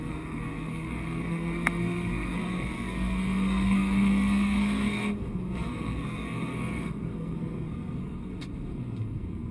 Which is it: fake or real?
fake